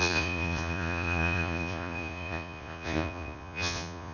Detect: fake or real fake